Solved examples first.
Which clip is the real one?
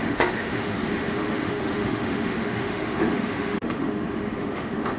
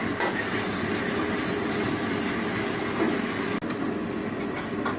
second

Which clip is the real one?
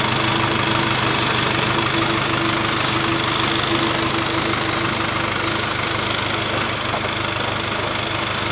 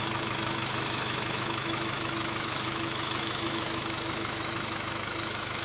first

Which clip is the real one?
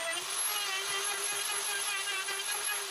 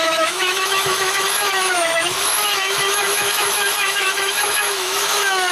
first